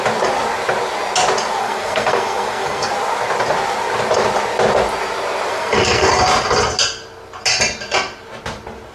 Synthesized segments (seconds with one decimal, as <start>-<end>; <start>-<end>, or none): 1.6-2.9; 5.5-6.1